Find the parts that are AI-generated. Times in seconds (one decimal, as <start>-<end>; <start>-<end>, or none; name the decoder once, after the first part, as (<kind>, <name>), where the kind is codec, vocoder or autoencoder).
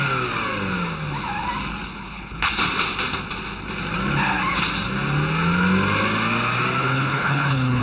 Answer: 1.9-2.5 (codec, HILCodec); 6.8-7.8